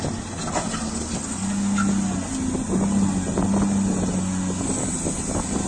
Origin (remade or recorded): recorded